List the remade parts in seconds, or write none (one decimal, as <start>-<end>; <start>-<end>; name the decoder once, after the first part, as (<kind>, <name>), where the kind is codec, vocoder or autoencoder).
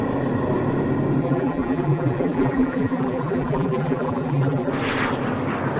1.2-4.7 (vocoder, BigVGAN v2)